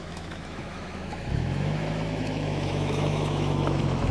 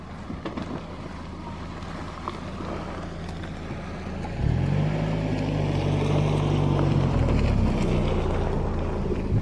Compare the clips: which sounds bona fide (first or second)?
second